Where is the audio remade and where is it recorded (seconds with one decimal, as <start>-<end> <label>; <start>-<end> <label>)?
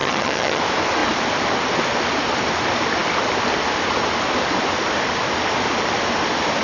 0.0-0.6 remade; 0.6-6.6 recorded